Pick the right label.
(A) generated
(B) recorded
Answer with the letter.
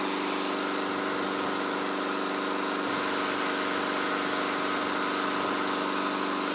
B